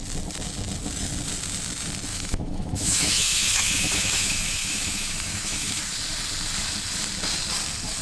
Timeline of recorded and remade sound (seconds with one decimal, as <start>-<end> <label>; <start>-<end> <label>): 0.0-2.1 recorded; 2.1-5.8 remade; 5.8-8.0 recorded